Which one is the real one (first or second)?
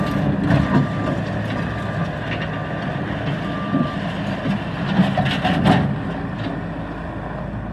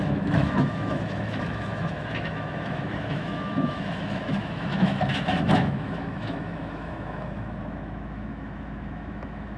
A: first